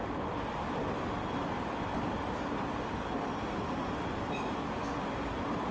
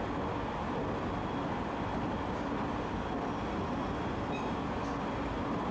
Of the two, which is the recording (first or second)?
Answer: second